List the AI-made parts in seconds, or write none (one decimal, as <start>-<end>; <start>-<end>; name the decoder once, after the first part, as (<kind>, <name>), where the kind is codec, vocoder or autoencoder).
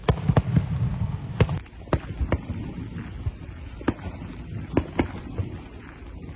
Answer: none